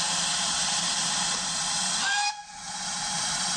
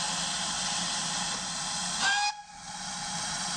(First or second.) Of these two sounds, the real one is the second